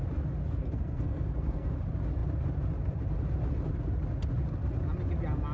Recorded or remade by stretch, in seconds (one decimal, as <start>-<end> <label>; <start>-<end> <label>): 0.0-0.6 recorded; 0.6-1.7 remade; 1.7-5.5 recorded